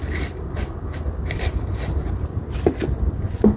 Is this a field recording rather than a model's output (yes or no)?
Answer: yes